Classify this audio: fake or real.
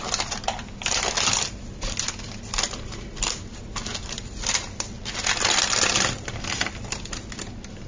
real